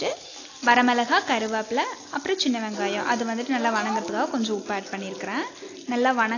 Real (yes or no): yes